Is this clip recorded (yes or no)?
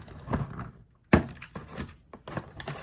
yes